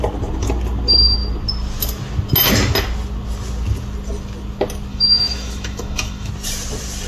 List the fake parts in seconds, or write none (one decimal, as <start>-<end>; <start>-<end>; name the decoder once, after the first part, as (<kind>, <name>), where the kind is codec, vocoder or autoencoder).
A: 4.9-6.3 (autoencoder, DAC-VAE)